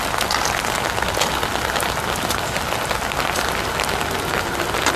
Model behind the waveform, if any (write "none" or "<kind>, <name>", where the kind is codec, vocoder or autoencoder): none